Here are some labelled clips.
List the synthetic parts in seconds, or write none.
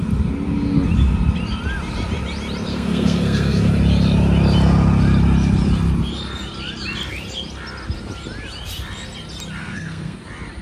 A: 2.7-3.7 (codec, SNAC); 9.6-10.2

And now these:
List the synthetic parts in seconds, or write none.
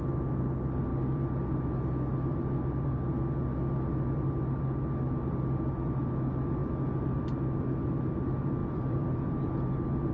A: 8.6-9.2 (vocoder, BigVGAN v2)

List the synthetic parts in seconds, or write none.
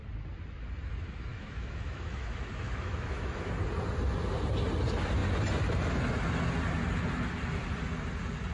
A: 1.3-3.5 (autoencoder, DAC-VAE)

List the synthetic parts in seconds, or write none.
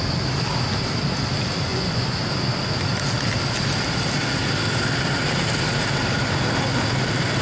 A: 1.7-2.2 (vocoder, Vocos)